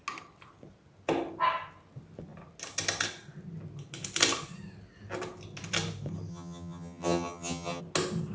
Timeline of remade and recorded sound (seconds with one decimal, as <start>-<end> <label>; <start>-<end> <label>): 0.0-6.3 recorded; 6.3-7.8 remade; 7.8-8.3 recorded